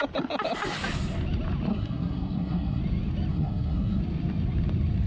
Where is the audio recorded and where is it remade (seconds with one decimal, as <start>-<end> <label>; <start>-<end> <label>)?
0.0-1.7 recorded; 1.7-2.8 remade; 2.8-3.3 recorded; 3.3-4.0 remade; 4.0-5.1 recorded